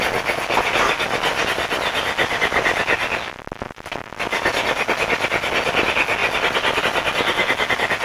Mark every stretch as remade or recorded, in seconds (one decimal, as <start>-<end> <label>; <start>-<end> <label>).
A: 0.0-8.0 recorded